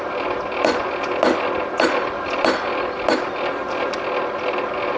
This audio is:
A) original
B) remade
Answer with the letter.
A